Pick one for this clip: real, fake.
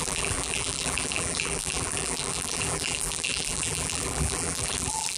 fake